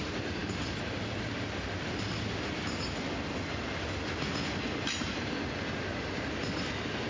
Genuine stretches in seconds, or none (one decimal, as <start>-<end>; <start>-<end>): 0.0-7.1